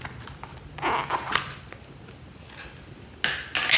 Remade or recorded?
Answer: recorded